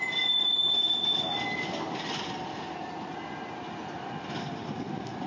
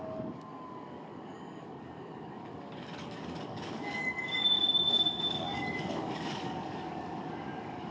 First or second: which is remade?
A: second